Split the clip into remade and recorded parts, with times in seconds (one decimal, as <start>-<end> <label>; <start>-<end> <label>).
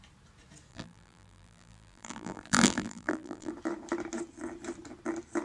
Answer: 0.0-0.7 recorded; 0.7-3.5 remade; 3.5-5.4 recorded